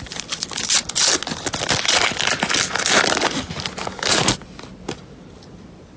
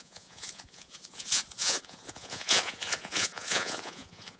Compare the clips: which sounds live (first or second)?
first